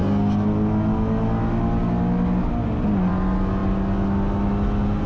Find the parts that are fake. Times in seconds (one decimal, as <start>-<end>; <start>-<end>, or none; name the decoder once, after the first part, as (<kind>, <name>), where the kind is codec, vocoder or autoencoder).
none